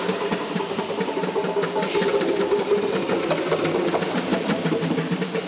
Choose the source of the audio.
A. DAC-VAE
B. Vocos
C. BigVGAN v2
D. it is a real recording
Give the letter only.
C